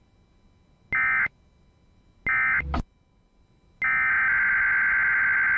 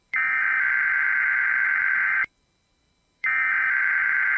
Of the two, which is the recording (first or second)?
first